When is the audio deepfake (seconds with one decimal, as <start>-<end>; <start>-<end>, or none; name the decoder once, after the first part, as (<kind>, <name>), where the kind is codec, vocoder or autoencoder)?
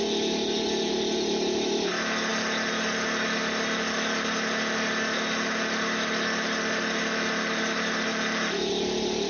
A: none